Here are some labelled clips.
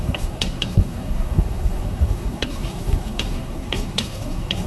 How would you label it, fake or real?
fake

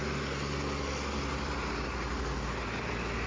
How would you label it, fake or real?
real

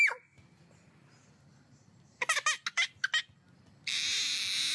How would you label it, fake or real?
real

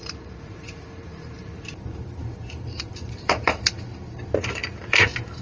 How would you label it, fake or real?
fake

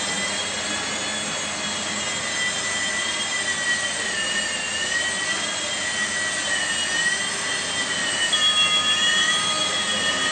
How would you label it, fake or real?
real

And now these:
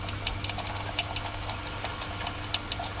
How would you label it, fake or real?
real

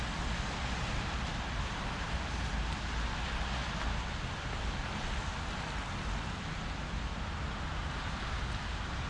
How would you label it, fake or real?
real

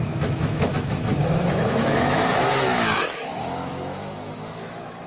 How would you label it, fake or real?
fake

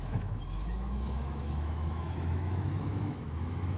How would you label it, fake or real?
fake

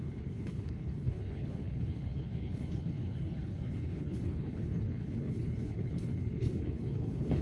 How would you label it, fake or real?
fake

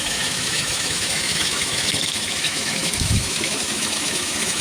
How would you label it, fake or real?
fake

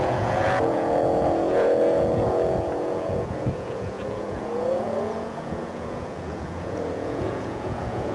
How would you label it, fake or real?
fake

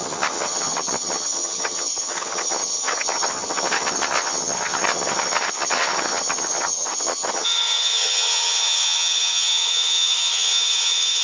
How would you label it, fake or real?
fake